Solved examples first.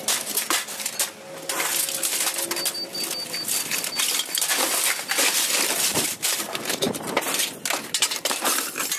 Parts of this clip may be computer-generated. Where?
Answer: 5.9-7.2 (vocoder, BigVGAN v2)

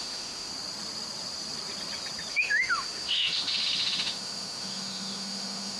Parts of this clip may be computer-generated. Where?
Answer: 0.0-0.5 (autoencoder, DAC-VAE); 2.3-5.8

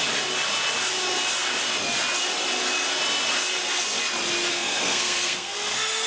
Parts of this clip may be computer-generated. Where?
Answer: 4.5-6.1 (codec, SNAC)

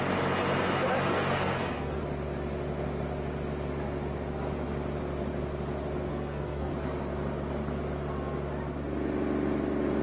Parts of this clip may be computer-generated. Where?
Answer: 1.1-2.0 (codec, SNAC); 6.1-6.7